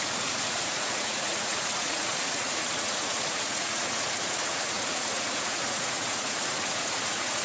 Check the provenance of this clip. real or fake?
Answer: fake